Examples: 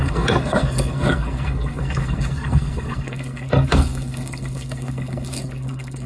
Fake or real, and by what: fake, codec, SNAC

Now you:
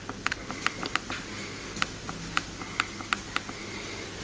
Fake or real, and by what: real